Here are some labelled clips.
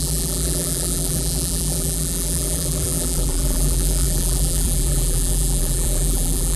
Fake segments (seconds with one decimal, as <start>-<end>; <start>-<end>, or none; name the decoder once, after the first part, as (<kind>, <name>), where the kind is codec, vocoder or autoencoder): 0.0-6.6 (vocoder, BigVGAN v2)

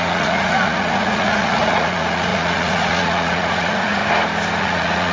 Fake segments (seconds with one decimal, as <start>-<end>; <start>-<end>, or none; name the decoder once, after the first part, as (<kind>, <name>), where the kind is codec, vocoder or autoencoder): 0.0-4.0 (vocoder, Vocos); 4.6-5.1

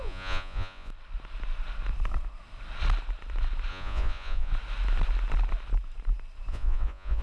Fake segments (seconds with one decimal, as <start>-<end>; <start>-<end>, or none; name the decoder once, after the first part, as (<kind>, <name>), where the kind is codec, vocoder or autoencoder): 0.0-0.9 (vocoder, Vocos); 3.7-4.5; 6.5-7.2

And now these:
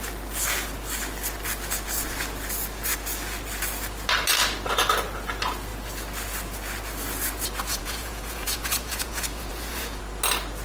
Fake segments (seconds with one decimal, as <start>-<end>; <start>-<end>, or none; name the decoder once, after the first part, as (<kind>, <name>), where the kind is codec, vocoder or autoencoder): 7.7-10.0 (vocoder, Vocos)

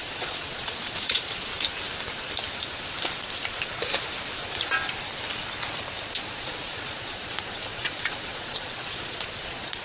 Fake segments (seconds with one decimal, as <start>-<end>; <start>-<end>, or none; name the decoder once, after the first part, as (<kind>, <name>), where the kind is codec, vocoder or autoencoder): 0.0-1.5 (vocoder, Vocos); 6.0-9.8

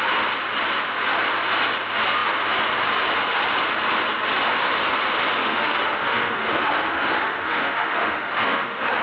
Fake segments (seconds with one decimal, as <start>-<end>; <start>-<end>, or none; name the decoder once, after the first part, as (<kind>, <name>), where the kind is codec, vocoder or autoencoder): 5.4-9.0 (autoencoder, DAC-VAE)

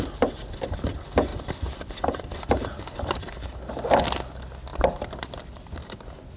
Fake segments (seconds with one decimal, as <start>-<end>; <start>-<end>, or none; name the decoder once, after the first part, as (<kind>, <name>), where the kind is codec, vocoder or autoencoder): 1.3-3.7 (vocoder, BigVGAN v2)

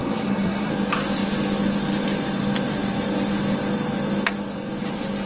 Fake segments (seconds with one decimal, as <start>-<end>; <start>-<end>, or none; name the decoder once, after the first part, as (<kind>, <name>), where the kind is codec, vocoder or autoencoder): 0.0-0.7 (codec, SNAC)